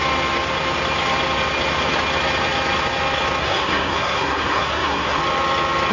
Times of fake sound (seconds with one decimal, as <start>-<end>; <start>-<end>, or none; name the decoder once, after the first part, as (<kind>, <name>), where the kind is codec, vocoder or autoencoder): 3.4-5.2 (codec, SNAC)